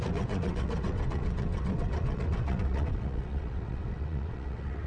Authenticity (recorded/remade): remade